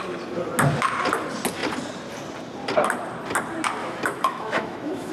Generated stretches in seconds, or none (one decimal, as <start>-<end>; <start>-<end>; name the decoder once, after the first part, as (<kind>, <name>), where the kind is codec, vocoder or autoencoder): 3.8-5.1 (autoencoder, DAC-VAE)

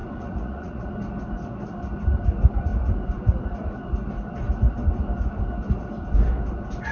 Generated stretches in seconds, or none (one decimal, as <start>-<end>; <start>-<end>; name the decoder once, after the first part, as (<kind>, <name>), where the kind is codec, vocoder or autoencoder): 0.0-0.9 (vocoder, Vocos)

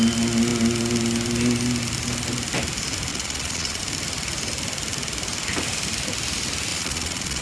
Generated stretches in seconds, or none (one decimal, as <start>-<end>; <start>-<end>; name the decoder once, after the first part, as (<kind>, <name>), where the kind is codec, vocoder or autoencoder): 3.1-3.8 (vocoder, Vocos); 6.7-7.4

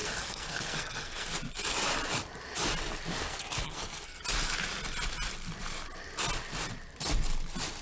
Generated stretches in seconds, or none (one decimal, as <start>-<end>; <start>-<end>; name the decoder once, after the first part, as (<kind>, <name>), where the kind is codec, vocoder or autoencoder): 0.0-1.3 (codec, SNAC); 3.2-4.2

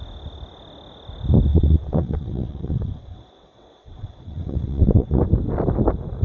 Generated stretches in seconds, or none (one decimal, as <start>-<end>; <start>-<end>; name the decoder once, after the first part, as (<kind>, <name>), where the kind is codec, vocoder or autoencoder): 1.5-5.2 (vocoder, WaveNeXt)

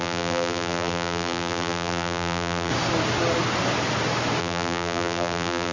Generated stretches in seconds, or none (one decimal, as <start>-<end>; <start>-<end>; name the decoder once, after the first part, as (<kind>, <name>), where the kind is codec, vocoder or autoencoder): 0.0-2.7 (vocoder, BigVGAN v2); 4.4-5.7

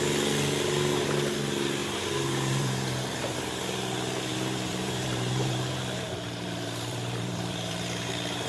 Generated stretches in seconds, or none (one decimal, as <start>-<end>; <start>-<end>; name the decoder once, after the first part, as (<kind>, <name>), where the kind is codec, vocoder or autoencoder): 1.8-3.6 (vocoder, BigVGAN v2); 4.3-8.5

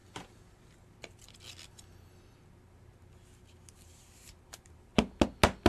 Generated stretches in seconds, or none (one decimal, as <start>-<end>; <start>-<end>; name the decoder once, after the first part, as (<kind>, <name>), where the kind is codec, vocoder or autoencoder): none